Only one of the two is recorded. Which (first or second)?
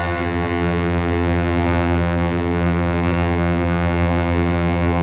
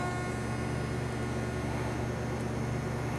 second